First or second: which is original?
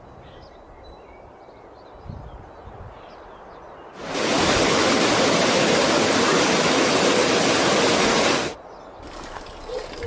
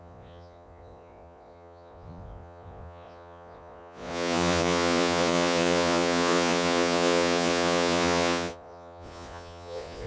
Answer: first